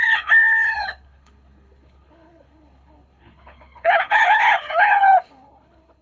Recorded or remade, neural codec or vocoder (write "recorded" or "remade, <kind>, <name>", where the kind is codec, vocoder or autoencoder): remade, codec, HILCodec